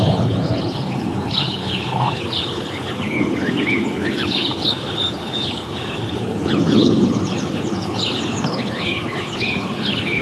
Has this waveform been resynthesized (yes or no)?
yes